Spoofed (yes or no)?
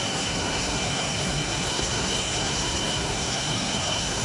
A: yes